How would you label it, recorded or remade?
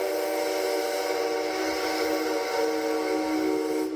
recorded